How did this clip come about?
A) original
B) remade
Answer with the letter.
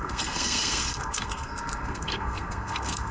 B